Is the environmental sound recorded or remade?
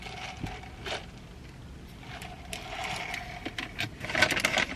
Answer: recorded